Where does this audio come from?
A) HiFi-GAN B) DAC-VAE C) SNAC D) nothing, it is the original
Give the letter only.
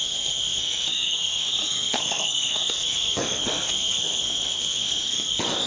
C